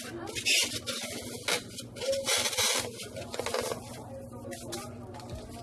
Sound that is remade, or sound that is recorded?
recorded